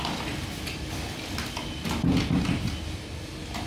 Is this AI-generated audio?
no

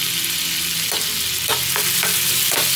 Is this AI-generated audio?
no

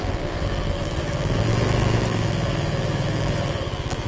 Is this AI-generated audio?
yes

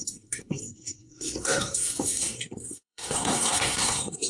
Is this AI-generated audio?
yes